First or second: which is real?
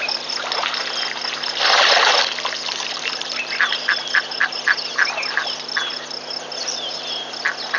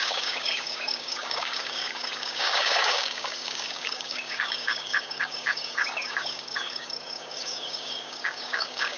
first